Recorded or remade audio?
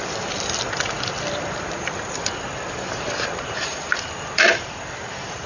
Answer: remade